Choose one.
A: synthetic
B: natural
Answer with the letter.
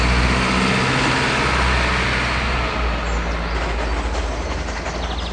B